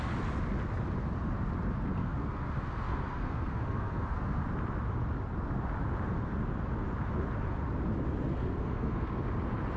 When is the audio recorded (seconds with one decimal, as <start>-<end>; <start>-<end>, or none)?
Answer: 0.0-2.0; 4.4-8.3; 9.2-9.8